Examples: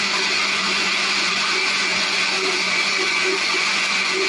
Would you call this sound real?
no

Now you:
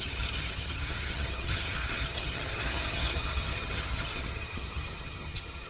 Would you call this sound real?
no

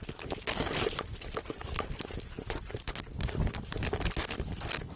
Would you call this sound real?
yes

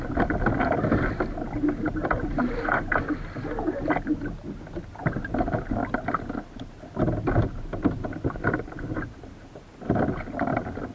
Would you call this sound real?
yes